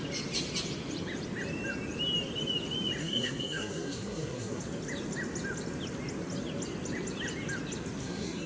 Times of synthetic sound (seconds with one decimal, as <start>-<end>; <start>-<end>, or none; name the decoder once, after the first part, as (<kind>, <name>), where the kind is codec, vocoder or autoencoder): 3.0-4.6 (codec, SNAC); 8.0-8.5